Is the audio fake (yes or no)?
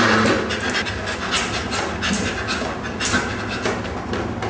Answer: no